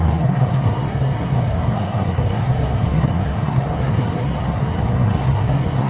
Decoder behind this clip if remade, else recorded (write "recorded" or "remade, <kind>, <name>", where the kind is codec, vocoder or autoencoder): remade, codec, SNAC